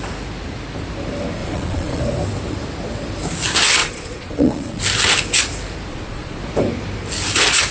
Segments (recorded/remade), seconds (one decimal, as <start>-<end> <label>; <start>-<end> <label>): 0.0-1.4 recorded; 1.4-2.0 remade; 2.0-3.8 recorded; 3.8-4.8 remade; 4.8-5.9 recorded; 5.9-6.4 remade; 6.4-7.7 recorded